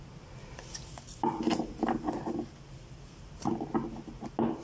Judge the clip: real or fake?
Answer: real